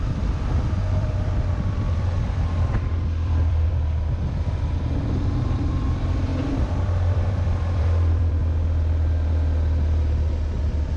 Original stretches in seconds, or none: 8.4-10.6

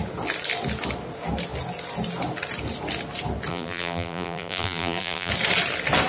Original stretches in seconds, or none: 0.0-3.5; 5.3-6.1

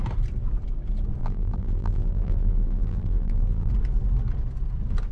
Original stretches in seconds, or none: 0.0-1.2; 3.7-5.1

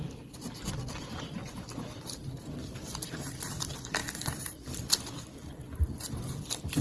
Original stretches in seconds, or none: none

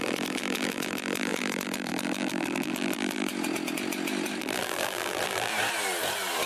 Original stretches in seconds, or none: 3.3-4.4; 5.5-6.5

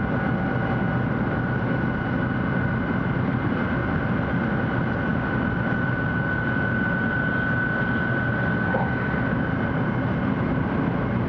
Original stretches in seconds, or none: 0.0-11.3

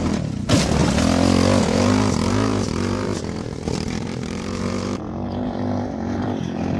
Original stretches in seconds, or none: 0.8-1.6

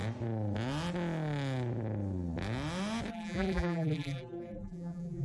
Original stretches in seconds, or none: 0.0-3.1